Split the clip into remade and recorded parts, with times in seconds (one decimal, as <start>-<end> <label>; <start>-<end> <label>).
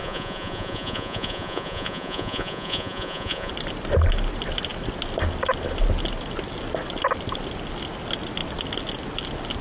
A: 0.0-3.5 remade; 3.5-9.6 recorded